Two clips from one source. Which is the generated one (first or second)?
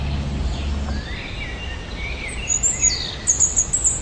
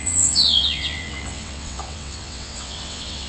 second